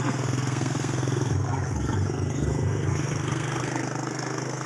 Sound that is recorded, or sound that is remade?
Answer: remade